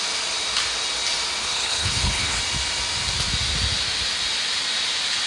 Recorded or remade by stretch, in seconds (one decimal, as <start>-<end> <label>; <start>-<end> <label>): 0.0-1.4 recorded; 1.4-2.4 remade; 2.4-5.3 recorded